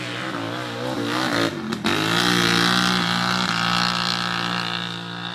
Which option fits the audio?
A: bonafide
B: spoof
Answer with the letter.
A